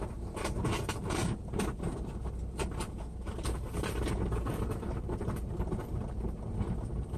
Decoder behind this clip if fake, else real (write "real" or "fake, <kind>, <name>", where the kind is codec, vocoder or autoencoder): fake, vocoder, BigVGAN v2